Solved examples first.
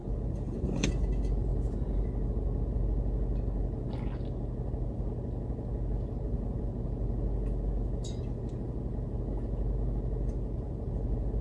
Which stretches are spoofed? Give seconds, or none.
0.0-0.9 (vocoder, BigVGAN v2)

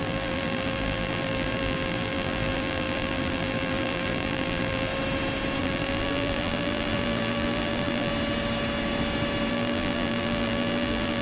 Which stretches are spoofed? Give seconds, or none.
0.0-4.9 (vocoder, BigVGAN v2); 5.6-8.1; 9.5-11.2